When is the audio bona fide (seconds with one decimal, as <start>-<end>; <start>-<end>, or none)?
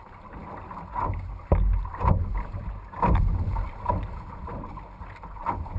0.0-5.8